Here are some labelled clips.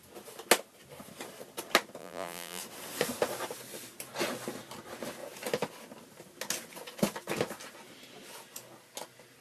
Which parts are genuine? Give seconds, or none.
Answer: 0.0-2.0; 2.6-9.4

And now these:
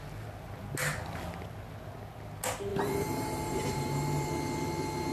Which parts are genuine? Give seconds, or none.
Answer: 0.0-2.7; 4.3-5.1

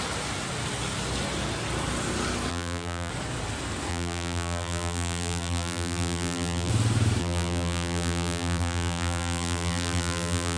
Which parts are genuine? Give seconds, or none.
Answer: 0.0-2.5; 3.1-3.9; 6.7-7.2

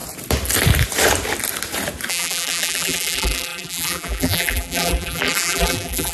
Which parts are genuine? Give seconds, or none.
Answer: 0.0-2.1